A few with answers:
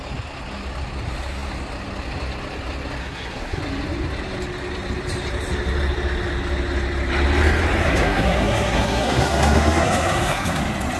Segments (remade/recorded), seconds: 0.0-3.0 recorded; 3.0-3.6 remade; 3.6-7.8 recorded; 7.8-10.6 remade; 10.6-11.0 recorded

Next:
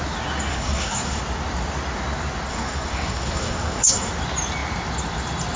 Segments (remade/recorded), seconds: 0.0-0.5 recorded; 0.5-1.2 remade; 1.2-2.5 recorded; 2.5-4.1 remade; 4.1-5.6 recorded